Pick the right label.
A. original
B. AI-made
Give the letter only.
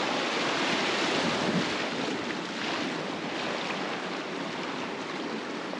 A